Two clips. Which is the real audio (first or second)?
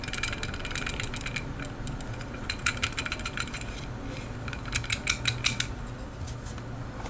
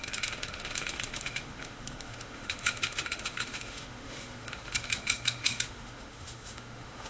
first